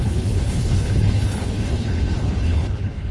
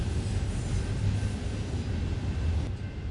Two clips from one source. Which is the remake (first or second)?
first